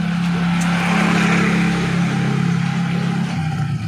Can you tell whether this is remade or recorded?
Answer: recorded